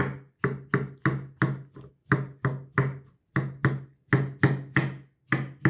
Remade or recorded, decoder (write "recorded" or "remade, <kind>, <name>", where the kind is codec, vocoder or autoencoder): recorded